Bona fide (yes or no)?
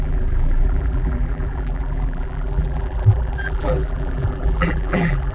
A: no